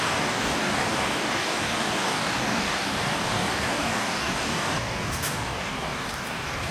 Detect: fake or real fake